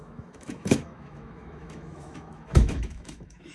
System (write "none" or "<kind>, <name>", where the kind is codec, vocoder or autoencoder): autoencoder, DAC-VAE